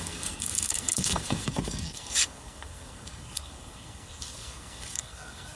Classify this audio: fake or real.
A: fake